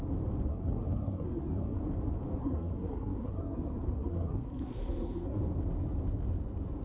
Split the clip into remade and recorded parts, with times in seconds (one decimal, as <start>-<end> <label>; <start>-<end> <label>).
0.0-0.5 recorded; 0.5-1.8 remade; 1.8-2.4 recorded; 2.4-5.4 remade; 5.4-6.8 recorded